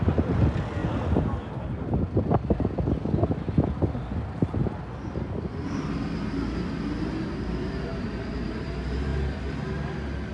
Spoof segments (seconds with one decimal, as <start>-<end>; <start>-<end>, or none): 7.9-8.7

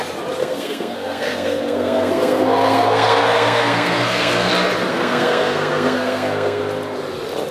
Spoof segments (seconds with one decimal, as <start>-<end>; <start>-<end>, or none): 0.4-4.5; 4.9-6.6

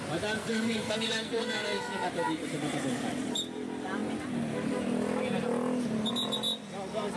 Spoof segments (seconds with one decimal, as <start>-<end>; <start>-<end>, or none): 0.4-2.1

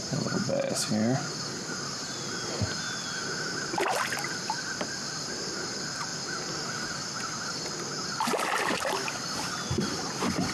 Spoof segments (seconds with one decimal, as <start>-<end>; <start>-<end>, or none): none

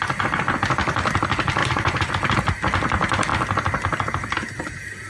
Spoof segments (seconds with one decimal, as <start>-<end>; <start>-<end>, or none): 1.6-2.1

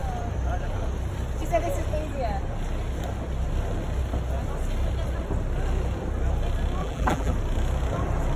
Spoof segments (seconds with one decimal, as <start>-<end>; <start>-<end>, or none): 6.8-7.3

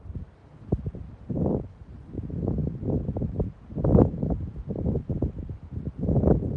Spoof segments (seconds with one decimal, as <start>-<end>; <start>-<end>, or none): none

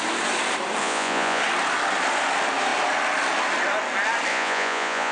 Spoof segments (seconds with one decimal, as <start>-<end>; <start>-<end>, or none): 0.8-1.4; 4.3-5.1